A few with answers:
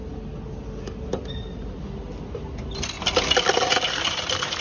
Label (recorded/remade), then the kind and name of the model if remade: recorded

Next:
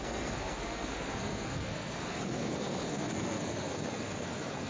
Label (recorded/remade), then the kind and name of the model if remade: remade, codec, SNAC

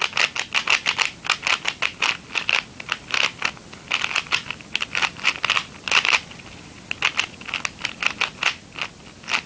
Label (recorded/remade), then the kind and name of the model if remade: recorded